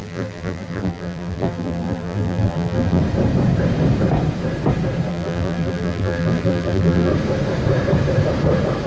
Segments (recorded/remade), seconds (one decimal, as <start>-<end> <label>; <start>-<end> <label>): 0.0-3.0 remade; 3.0-5.1 recorded; 5.1-7.1 remade; 7.1-8.9 recorded